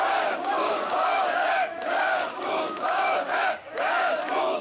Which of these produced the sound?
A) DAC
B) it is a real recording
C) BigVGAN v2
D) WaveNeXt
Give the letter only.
A